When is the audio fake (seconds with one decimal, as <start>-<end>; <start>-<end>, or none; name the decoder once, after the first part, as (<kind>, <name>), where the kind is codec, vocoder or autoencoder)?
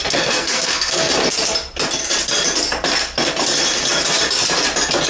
0.0-1.1 (codec, SNAC)